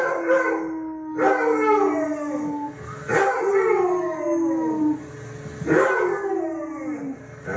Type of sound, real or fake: real